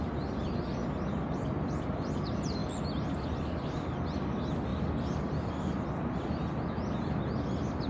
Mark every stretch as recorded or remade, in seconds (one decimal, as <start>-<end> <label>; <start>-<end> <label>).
0.0-7.9 recorded